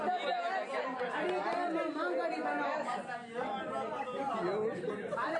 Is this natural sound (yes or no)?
yes